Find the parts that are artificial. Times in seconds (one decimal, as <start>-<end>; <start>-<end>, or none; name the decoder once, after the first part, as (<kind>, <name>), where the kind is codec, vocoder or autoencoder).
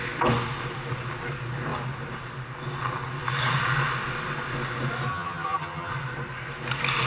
5.1-5.9 (vocoder, HiFi-GAN)